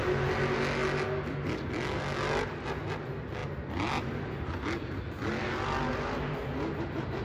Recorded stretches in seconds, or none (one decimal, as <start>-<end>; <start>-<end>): 0.0-7.2